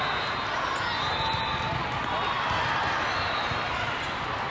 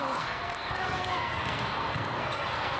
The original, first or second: first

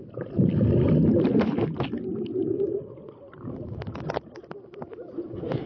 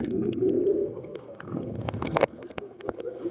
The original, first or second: first